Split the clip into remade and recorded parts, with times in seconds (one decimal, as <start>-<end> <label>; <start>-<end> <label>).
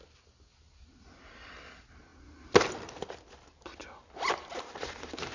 0.0-5.3 recorded